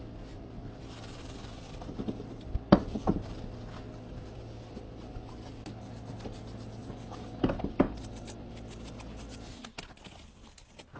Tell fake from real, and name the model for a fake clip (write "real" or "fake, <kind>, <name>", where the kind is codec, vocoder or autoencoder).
real